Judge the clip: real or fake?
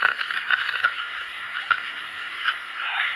fake